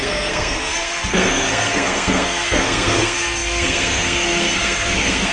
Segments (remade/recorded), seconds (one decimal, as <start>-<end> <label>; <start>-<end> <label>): 0.0-5.3 remade